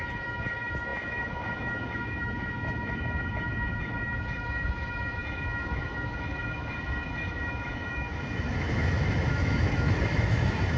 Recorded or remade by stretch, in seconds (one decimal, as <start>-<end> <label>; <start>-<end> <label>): 0.0-10.8 remade